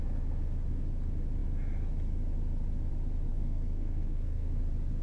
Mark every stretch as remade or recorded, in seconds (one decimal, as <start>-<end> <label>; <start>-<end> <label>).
0.0-3.3 recorded; 3.3-4.6 remade; 4.6-5.0 recorded